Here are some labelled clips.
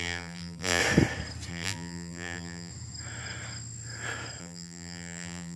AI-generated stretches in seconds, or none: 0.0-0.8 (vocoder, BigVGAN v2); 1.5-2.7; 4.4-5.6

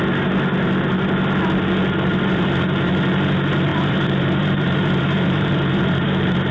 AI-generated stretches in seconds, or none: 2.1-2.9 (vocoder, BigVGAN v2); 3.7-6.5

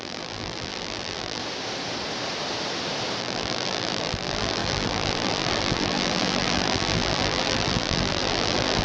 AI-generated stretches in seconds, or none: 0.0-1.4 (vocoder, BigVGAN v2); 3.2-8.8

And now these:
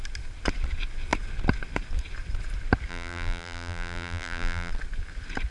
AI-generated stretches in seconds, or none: 2.9-4.7 (vocoder, BigVGAN v2)

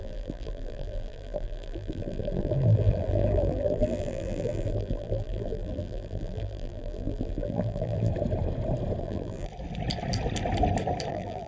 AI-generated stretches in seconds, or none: 0.0-8.1 (vocoder, BigVGAN v2); 9.0-9.5; 11.1-11.5

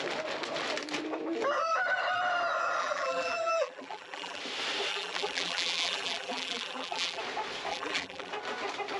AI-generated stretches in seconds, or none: 2.8-4.4 (vocoder, BigVGAN v2); 4.9-7.2; 7.7-8.3

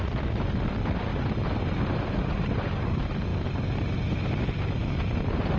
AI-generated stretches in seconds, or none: none